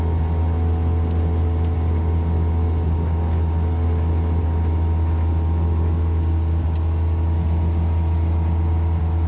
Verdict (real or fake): real